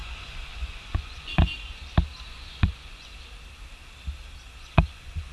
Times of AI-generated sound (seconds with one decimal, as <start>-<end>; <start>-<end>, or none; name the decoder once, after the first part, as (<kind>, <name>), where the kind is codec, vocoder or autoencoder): 0.0-1.5 (vocoder, Vocos); 2.3-3.1; 4.6-5.3